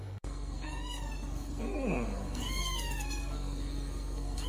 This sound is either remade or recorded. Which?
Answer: remade